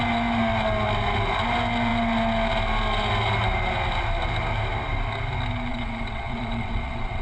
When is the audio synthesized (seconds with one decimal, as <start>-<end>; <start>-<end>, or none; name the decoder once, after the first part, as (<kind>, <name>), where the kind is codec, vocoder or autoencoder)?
5.7-7.2 (vocoder, WaveNeXt)